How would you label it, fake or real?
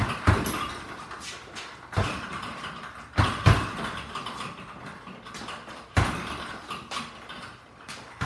real